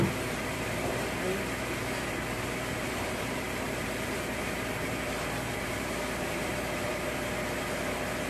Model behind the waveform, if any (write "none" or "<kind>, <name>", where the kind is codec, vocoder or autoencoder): vocoder, BigVGAN v2